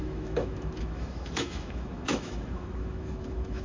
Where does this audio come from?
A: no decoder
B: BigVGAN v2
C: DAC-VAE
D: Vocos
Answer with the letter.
C